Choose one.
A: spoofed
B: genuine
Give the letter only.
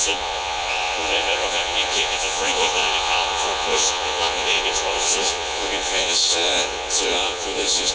A